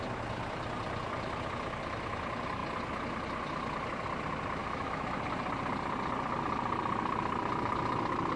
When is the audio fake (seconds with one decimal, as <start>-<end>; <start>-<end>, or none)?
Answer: 4.6-5.2